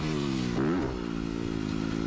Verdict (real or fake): real